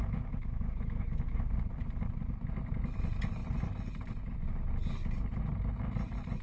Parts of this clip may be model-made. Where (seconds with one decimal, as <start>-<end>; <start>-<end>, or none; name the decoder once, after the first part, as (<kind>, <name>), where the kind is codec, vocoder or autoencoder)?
0.0-1.4 (autoencoder, DAC-VAE)

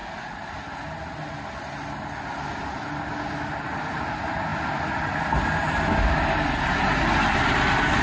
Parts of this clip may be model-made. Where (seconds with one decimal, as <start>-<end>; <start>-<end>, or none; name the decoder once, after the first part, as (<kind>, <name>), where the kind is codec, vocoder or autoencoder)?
none